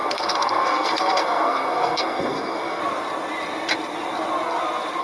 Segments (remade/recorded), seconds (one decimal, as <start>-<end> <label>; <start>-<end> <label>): 0.0-2.8 remade; 2.8-5.0 recorded